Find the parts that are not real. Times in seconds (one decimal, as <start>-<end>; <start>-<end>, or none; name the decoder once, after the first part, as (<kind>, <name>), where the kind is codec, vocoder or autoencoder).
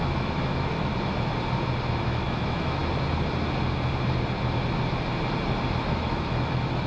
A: 0.0-0.9 (autoencoder, DAC-VAE); 2.0-2.8; 5.8-6.9